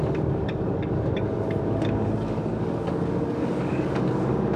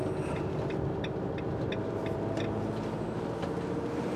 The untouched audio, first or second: second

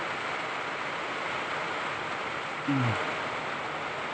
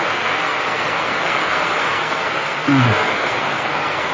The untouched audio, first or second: first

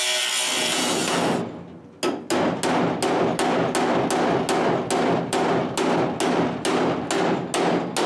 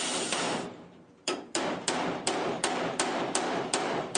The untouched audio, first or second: first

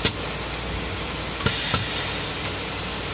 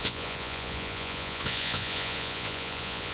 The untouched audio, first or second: first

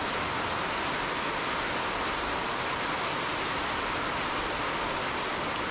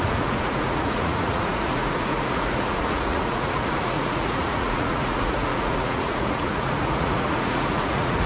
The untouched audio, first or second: first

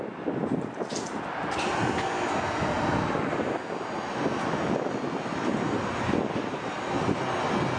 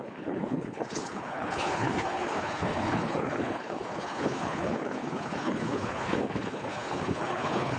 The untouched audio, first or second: first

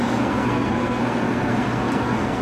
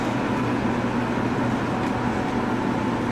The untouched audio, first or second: second